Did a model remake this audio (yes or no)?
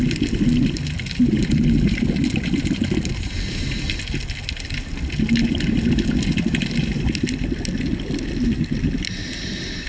no